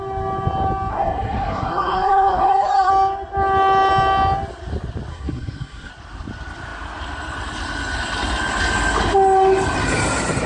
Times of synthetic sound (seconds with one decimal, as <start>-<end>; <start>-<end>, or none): 0.9-2.9; 5.1-5.9